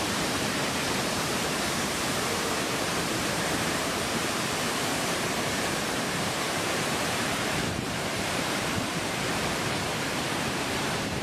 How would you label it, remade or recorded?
remade